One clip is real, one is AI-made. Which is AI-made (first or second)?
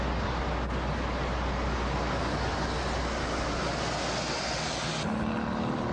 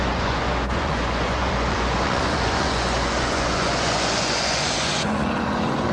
second